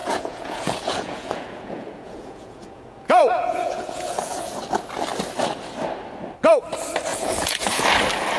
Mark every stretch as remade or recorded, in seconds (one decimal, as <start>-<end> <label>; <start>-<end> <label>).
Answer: 0.0-4.5 remade; 4.5-7.1 recorded; 7.1-7.8 remade; 7.8-8.4 recorded